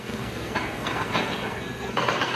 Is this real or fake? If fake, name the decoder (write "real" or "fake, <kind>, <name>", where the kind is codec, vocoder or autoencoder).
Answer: fake, codec, SNAC